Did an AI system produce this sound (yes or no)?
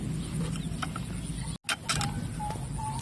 no